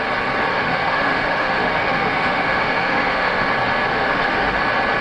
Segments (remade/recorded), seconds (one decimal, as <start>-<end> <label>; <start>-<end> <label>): 0.0-0.5 recorded; 0.5-3.5 remade; 3.5-3.9 recorded; 3.9-4.6 remade; 4.6-5.0 recorded